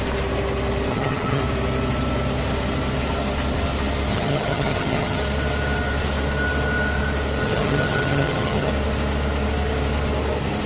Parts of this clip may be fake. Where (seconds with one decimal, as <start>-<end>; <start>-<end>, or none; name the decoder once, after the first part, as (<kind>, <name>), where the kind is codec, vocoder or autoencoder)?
0.9-1.4 (vocoder, HiFi-GAN); 4.1-5.2; 7.4-8.7